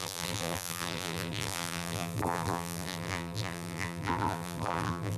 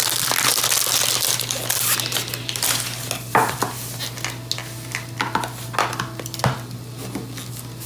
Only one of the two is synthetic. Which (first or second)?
first